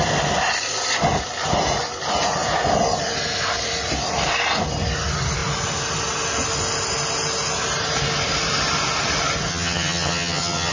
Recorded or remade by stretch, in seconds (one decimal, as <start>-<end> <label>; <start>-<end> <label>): 0.0-9.5 recorded; 9.5-10.7 remade